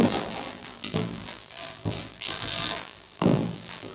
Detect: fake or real fake